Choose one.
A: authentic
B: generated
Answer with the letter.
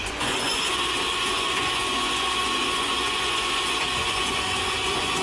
B